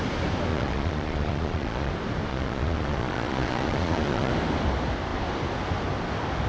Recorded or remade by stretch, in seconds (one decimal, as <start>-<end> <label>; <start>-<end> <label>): 0.0-0.5 recorded; 0.5-1.9 remade; 1.9-2.3 recorded; 2.3-4.3 remade; 4.3-6.5 recorded

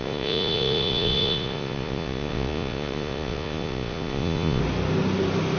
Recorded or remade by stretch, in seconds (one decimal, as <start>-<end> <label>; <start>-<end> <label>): 0.0-4.6 remade; 4.6-5.6 recorded

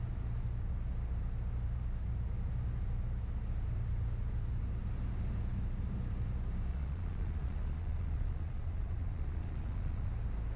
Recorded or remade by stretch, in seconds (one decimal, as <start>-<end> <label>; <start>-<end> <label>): 0.0-6.7 recorded; 6.7-10.1 remade; 10.1-10.6 recorded

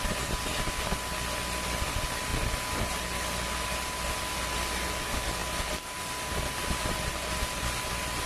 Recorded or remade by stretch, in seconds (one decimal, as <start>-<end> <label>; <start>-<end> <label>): 0.0-8.3 recorded

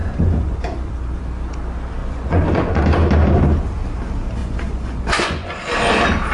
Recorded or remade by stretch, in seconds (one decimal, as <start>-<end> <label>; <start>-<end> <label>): 0.0-0.9 remade; 0.9-2.0 recorded; 2.0-2.8 remade; 2.8-4.4 recorded; 4.4-5.6 remade; 5.6-6.3 recorded